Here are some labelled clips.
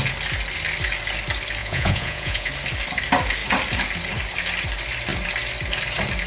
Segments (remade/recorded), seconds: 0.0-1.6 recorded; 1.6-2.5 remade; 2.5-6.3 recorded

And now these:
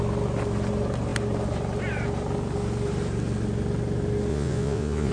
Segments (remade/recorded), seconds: 0.0-4.3 recorded; 4.3-5.1 remade